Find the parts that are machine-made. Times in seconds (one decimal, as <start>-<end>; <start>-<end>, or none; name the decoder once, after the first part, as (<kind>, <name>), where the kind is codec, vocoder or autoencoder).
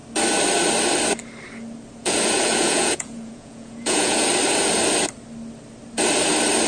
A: 2.0-4.3 (vocoder, Vocos)